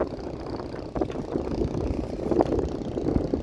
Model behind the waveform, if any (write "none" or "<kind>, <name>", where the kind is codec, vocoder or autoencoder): none